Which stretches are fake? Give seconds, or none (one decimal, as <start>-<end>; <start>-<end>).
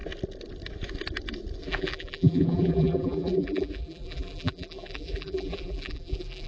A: 1.6-6.5